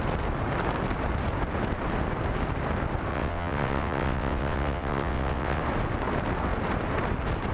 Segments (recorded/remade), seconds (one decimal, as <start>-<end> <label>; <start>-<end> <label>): 0.0-3.1 recorded; 3.1-5.6 remade; 5.6-7.5 recorded